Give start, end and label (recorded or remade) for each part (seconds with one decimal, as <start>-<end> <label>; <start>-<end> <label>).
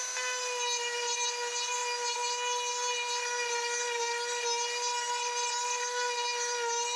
0.0-7.0 recorded